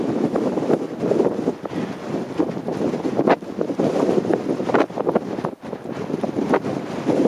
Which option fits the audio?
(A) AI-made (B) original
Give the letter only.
B